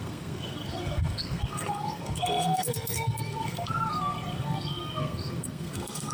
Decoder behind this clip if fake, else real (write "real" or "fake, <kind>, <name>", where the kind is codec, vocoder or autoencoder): fake, codec, SNAC